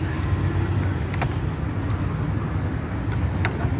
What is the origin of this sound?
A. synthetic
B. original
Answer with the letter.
B